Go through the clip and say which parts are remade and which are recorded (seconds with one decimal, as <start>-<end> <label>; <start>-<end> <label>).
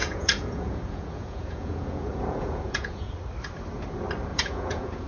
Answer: 0.0-3.1 remade; 3.1-4.3 recorded; 4.3-5.1 remade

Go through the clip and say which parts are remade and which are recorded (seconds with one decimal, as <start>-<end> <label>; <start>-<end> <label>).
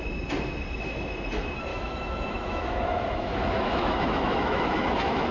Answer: 0.0-1.7 recorded; 1.7-5.3 remade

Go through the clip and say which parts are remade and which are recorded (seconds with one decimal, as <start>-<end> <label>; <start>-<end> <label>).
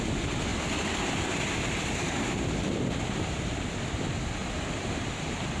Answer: 0.0-5.6 recorded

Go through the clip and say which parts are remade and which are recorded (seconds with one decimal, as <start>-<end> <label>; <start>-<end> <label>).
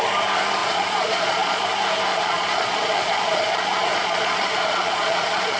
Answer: 0.0-0.6 recorded; 0.6-1.6 remade; 1.6-2.1 recorded; 2.1-5.6 remade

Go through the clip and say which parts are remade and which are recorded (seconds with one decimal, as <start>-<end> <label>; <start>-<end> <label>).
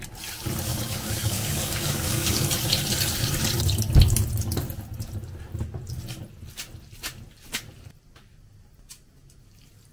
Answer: 0.0-0.7 recorded; 0.7-2.5 remade; 2.5-9.9 recorded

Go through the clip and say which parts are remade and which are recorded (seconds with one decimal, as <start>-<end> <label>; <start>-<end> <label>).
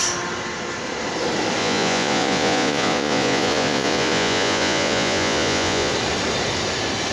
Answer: 0.0-1.6 recorded; 1.6-5.9 remade; 5.9-7.1 recorded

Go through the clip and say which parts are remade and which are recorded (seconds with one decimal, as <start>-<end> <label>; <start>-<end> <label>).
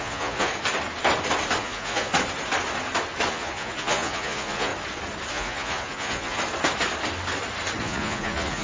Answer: 0.0-0.5 remade; 0.5-1.6 recorded; 1.6-2.1 remade; 2.1-3.3 recorded; 3.3-4.7 remade; 4.7-5.3 recorded; 5.3-6.4 remade; 6.4-7.8 recorded; 7.8-8.6 remade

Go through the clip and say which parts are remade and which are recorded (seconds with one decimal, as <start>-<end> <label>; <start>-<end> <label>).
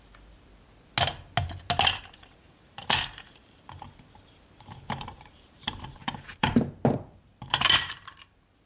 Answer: 0.0-0.5 remade; 0.5-2.0 recorded; 2.0-8.7 remade